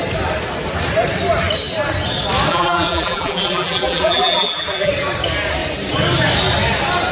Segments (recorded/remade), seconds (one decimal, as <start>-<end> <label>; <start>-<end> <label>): 0.0-2.5 recorded; 2.5-4.9 remade; 4.9-7.1 recorded